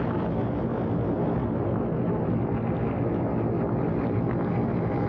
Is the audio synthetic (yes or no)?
no